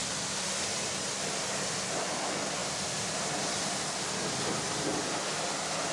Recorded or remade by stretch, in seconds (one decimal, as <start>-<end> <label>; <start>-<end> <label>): 0.0-5.9 recorded

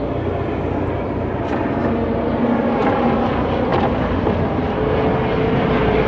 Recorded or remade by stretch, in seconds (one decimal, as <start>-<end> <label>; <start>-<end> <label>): 0.0-6.1 recorded

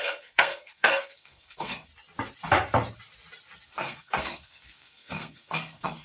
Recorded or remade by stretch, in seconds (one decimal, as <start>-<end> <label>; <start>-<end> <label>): 0.0-1.9 remade; 1.9-3.7 recorded; 3.7-6.0 remade